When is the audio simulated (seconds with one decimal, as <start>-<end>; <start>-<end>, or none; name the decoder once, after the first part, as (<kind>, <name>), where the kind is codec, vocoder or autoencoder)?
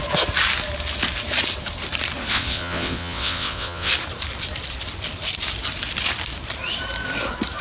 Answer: 2.3-3.9 (vocoder, WaveNeXt)